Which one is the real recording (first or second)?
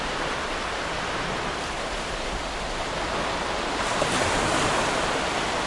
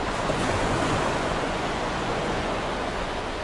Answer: first